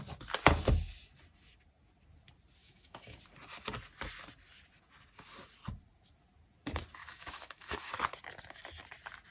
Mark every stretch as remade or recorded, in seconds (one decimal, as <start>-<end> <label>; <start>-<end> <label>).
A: 0.0-2.6 recorded; 2.6-3.2 remade; 3.2-7.0 recorded; 7.0-7.9 remade; 7.9-9.3 recorded